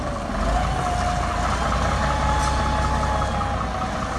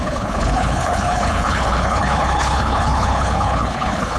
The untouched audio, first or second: first